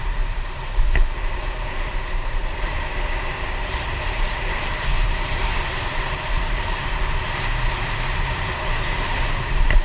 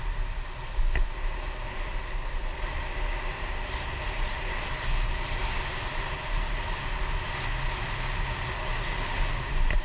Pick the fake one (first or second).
first